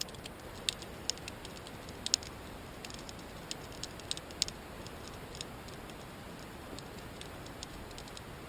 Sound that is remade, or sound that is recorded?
recorded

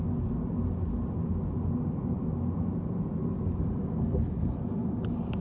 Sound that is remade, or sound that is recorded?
recorded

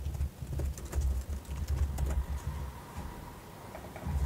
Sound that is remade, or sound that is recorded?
recorded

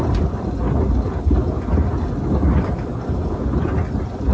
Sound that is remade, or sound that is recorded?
recorded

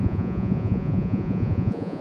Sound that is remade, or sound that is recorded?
remade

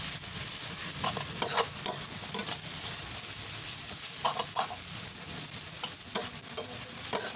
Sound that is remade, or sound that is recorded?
recorded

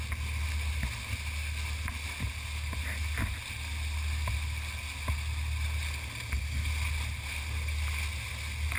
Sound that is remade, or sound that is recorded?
recorded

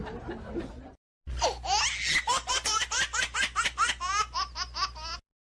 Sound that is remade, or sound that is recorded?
recorded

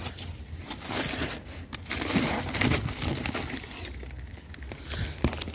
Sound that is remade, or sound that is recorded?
recorded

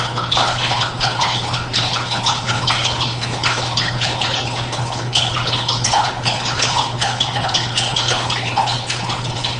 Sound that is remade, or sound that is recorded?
remade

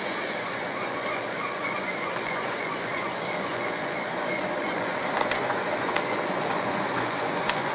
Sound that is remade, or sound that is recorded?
remade